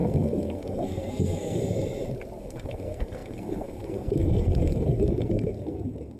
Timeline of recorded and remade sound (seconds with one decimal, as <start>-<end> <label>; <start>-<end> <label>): 0.0-1.6 remade; 1.6-2.4 recorded; 2.4-6.2 remade